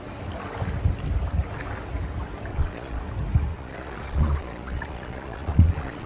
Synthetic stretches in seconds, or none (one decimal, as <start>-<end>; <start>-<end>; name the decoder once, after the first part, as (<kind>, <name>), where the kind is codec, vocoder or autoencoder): 2.5-3.0 (vocoder, Vocos); 3.5-6.1